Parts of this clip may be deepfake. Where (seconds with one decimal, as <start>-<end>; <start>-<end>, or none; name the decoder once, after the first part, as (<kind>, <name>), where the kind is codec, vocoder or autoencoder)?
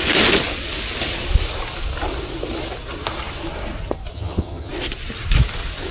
4.1-4.7 (vocoder, HiFi-GAN)